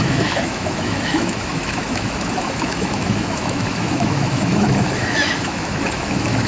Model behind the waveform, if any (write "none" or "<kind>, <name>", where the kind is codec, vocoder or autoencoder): autoencoder, DAC-VAE